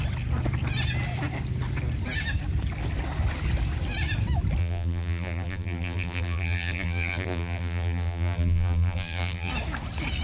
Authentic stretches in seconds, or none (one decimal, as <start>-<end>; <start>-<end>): 0.0-4.6; 9.5-10.2